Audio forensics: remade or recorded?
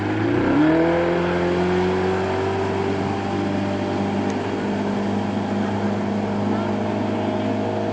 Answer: recorded